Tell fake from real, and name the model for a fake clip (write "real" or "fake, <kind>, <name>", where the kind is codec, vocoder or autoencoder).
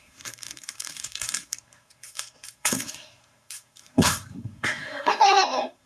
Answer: fake, codec, SNAC